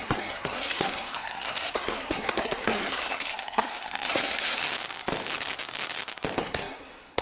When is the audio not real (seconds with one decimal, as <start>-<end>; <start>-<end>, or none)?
0.0-4.6; 6.4-7.2